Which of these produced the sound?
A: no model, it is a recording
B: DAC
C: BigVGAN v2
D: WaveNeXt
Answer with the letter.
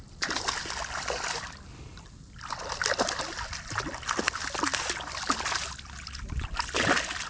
A